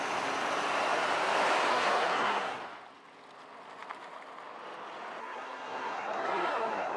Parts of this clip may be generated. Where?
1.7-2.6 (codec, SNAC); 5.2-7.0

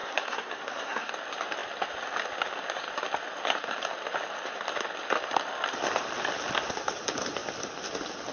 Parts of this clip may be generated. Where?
0.0-1.1 (codec, SNAC)

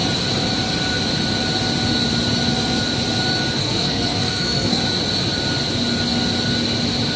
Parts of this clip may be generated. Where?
3.6-4.8 (codec, SNAC)

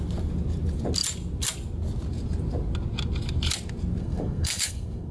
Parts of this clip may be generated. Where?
4.0-5.1 (codec, SNAC)

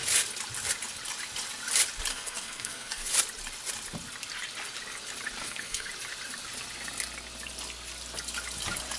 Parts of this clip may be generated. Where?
2.1-3.1 (codec, SNAC); 5.4-5.9